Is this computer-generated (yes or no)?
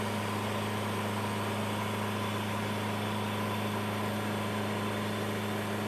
no